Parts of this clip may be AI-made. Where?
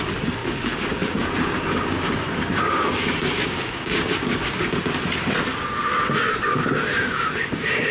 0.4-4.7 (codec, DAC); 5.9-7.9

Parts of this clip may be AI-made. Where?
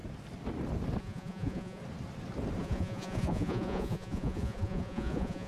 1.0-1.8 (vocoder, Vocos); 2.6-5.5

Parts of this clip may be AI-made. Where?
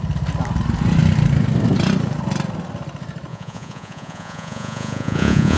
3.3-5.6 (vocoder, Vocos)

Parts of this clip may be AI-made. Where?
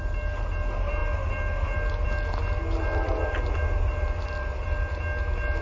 none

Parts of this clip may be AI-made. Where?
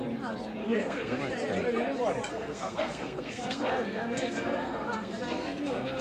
0.6-1.2 (codec, SNAC); 2.3-6.0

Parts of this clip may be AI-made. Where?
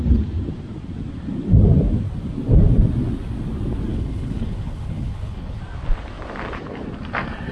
3.9-5.6 (codec, HILCodec)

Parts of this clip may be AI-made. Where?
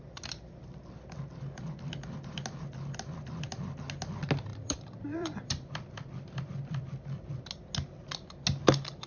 4.5-7.4 (vocoder, BigVGAN v2)